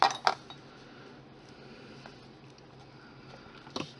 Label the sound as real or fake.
real